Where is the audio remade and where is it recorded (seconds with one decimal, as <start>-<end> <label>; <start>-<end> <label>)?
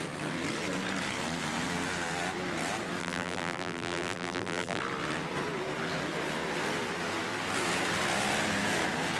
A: 0.0-3.0 recorded; 3.0-4.8 remade; 4.8-9.2 recorded